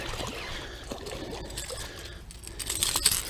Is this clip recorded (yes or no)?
yes